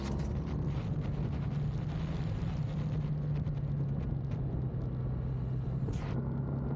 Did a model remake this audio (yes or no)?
no